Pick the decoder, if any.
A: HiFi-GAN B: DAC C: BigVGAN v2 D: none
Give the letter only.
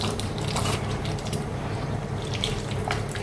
C